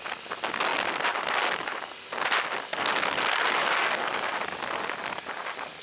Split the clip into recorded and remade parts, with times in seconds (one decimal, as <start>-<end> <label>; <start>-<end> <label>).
0.0-3.6 recorded; 3.6-4.3 remade; 4.3-5.8 recorded